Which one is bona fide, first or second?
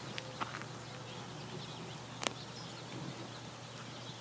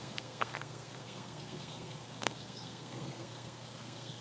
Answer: first